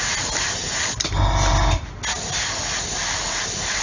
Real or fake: real